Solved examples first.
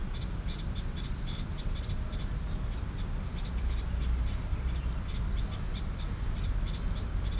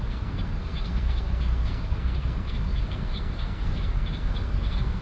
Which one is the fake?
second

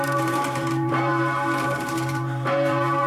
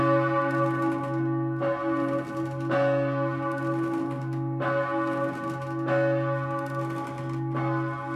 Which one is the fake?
first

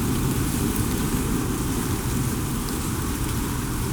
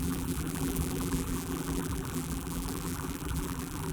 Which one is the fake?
second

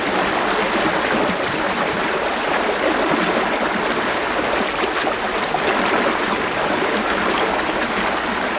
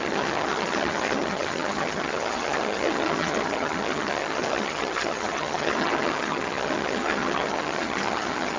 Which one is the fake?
second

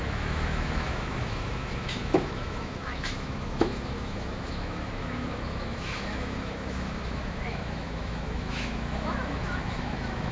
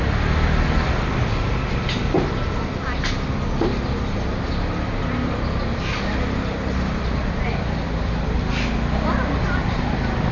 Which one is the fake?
first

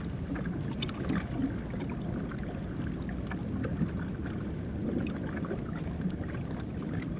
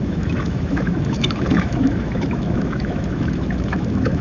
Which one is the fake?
second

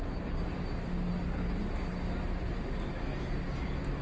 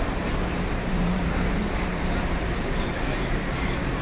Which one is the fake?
second